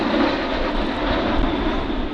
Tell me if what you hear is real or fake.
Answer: real